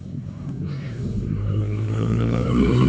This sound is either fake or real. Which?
fake